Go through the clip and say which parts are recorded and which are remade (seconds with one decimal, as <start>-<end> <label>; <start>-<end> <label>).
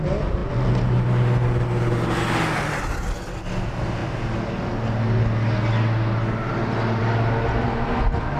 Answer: 0.0-8.4 recorded